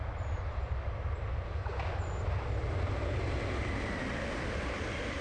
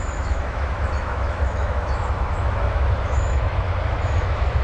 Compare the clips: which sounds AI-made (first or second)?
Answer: second